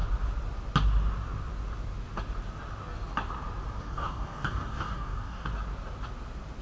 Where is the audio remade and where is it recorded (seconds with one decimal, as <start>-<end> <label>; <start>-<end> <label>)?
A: 0.0-3.8 recorded; 3.8-5.5 remade; 5.5-6.6 recorded